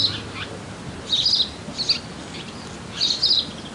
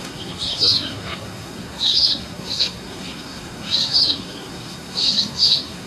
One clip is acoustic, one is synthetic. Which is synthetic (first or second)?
second